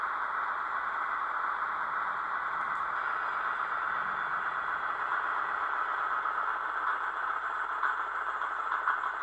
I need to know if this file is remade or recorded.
recorded